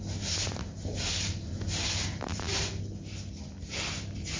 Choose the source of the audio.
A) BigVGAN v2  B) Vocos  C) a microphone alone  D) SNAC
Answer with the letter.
C